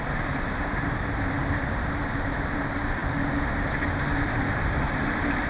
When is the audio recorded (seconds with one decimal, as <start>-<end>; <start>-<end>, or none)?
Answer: none